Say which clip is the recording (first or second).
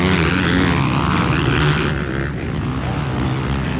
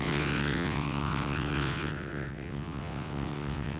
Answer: first